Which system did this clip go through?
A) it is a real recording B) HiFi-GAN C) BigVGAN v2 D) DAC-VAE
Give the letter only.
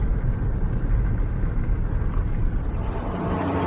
A